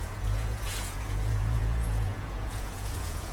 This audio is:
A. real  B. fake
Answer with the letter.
B